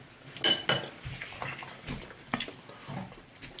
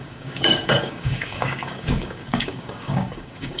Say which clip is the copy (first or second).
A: second